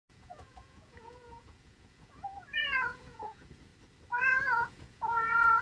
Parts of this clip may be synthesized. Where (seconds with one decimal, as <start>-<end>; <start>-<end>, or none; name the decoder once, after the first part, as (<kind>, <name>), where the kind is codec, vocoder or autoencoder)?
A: 0.0-3.7 (vocoder, Vocos); 4.2-5.6